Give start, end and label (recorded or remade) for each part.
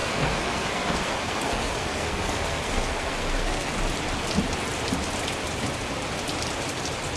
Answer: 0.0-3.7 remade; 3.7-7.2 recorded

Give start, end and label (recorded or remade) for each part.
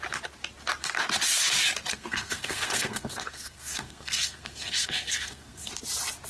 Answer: 0.0-1.9 recorded; 1.9-5.7 remade; 5.7-6.3 recorded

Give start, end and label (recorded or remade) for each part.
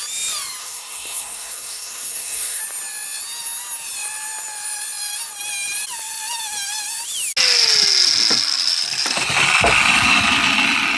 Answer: 0.0-0.6 recorded; 0.6-2.6 remade; 2.6-11.0 recorded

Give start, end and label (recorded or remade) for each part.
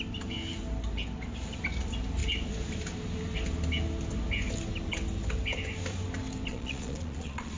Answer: 0.0-6.5 recorded; 6.5-7.6 remade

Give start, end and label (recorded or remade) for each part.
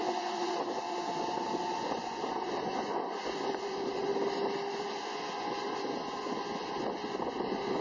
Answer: 0.0-4.1 remade; 4.1-4.8 recorded; 4.8-7.8 remade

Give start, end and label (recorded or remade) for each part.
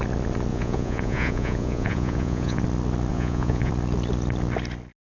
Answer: 0.0-0.5 recorded; 0.5-2.6 remade; 2.6-3.1 recorded; 3.1-3.7 remade; 3.7-5.1 recorded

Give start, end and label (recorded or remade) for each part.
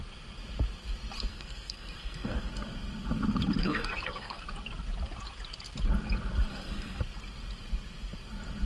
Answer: 0.0-1.3 recorded; 1.3-2.5 remade; 2.5-3.6 recorded; 3.6-4.5 remade; 4.5-6.5 recorded; 6.5-7.0 remade; 7.0-8.7 recorded